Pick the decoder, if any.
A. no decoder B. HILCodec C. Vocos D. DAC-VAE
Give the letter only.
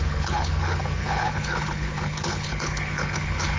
B